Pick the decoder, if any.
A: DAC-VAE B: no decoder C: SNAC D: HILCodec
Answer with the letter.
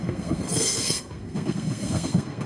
C